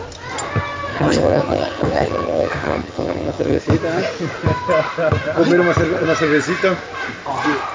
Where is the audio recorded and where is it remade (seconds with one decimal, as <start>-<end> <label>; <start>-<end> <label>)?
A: 0.0-0.9 recorded; 0.9-3.6 remade; 3.6-7.7 recorded